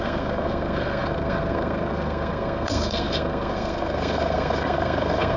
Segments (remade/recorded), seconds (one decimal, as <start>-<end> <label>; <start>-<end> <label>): 0.0-5.4 remade